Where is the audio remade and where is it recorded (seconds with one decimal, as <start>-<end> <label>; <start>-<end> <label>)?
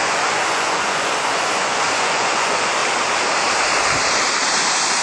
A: 0.0-2.8 remade; 2.8-5.0 recorded